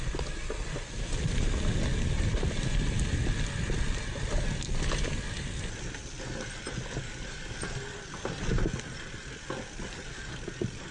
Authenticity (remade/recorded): recorded